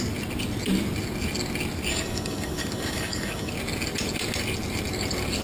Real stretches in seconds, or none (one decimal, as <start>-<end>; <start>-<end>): 0.0-1.9; 3.5-5.4